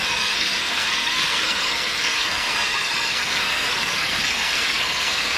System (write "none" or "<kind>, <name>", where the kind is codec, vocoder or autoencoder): codec, SNAC